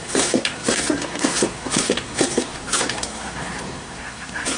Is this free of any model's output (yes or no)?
no